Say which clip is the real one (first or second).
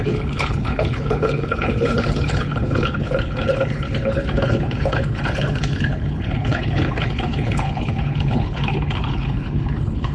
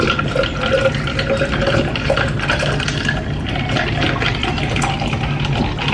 second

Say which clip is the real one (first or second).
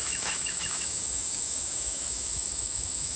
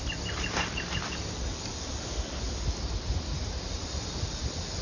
second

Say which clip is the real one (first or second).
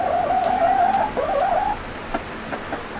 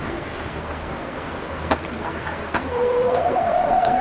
first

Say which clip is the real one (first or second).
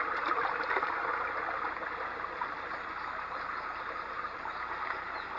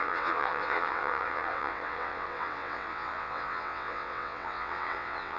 first